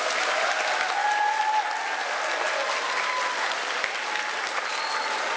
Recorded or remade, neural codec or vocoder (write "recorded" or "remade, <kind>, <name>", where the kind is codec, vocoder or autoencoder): recorded